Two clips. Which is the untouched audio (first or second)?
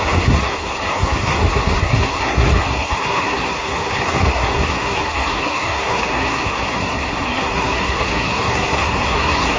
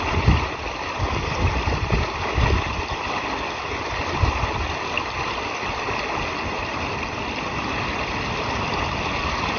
second